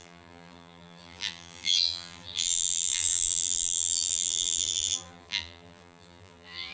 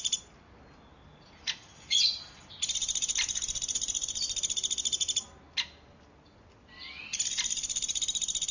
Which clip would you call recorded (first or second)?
second